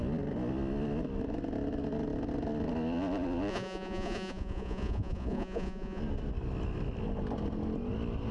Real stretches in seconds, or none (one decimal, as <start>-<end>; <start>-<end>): 0.0-3.5; 6.0-8.3